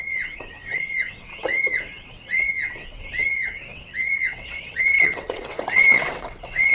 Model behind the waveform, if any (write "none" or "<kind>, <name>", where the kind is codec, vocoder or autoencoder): vocoder, WaveNeXt